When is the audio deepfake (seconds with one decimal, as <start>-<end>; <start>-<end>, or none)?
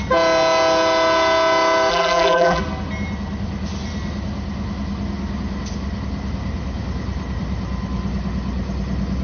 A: 1.9-2.6